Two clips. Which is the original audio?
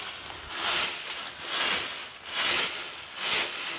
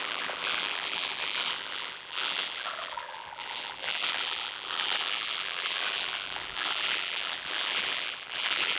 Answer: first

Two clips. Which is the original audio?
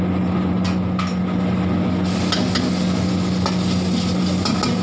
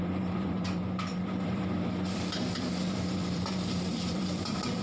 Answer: first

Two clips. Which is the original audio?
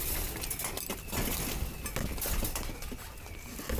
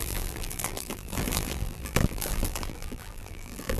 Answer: first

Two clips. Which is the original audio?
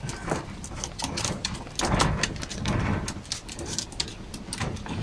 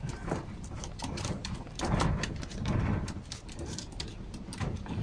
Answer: first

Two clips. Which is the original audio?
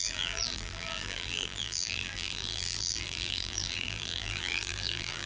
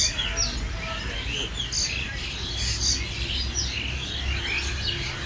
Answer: second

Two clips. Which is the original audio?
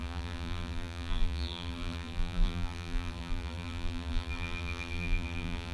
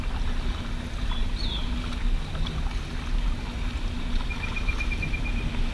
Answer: second